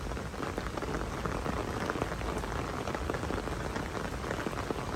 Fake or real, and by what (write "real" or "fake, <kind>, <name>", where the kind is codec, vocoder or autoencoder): real